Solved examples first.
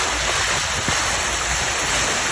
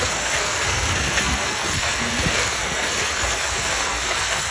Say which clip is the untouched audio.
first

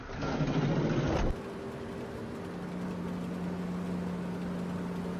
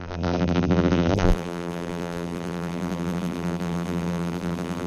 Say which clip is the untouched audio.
first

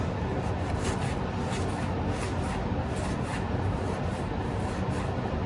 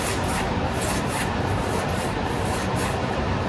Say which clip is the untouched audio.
first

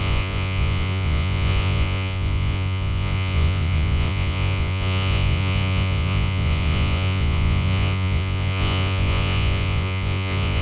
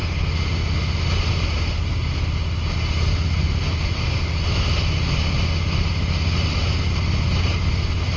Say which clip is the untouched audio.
second